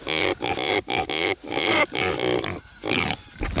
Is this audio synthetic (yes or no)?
no